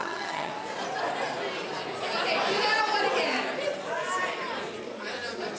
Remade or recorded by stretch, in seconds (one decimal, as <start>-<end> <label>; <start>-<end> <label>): 0.0-0.5 remade; 0.5-5.6 recorded